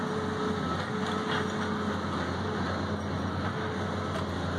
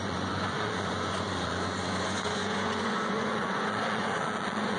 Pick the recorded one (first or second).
first